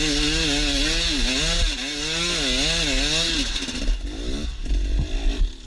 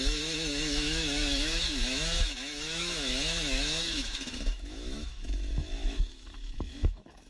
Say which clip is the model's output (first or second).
second